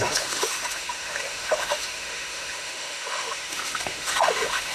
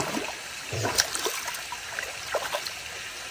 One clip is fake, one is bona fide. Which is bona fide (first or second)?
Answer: second